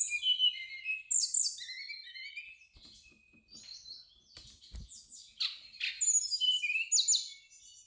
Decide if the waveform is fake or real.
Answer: real